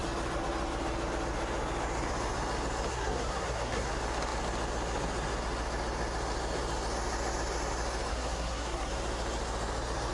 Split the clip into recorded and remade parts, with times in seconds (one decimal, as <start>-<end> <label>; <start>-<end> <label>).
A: 0.0-2.9 recorded; 2.9-3.9 remade; 3.9-8.1 recorded; 8.1-8.9 remade; 8.9-10.1 recorded